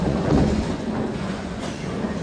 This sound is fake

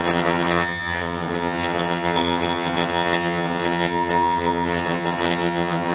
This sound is fake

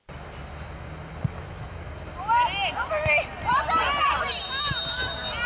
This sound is real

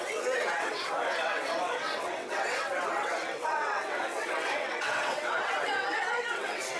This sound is fake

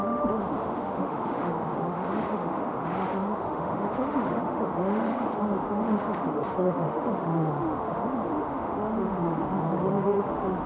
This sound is fake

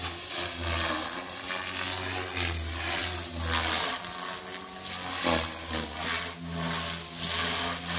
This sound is real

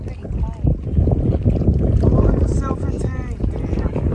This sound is real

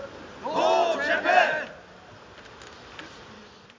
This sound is real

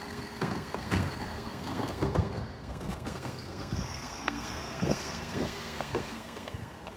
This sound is fake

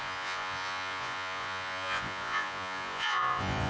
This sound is fake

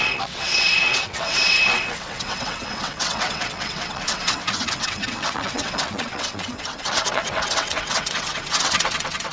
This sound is fake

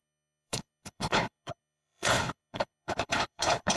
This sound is fake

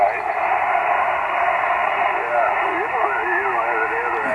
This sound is real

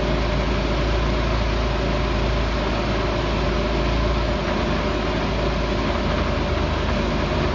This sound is real